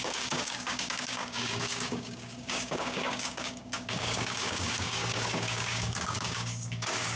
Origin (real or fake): fake